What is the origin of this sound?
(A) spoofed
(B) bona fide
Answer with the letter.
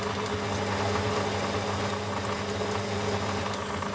B